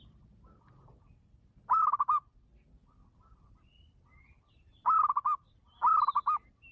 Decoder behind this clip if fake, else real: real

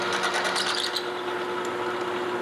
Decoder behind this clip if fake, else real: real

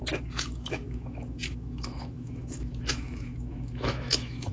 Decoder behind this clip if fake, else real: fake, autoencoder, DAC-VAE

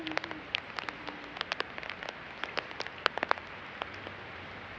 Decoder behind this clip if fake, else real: real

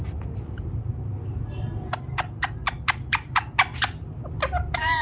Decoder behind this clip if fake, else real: real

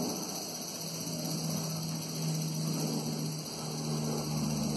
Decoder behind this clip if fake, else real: real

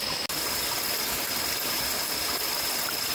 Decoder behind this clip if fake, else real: real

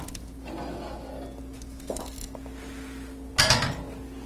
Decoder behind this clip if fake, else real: real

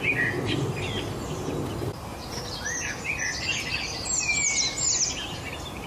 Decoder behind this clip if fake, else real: real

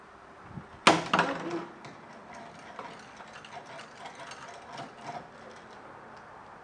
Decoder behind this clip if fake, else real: real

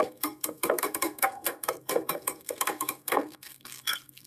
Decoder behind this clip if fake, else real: fake, codec, SNAC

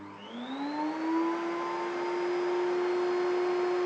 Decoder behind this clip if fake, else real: real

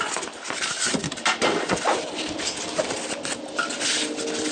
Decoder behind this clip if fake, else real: real